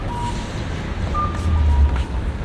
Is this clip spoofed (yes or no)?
no